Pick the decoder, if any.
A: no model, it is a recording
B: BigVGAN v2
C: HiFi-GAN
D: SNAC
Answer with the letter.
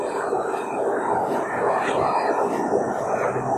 A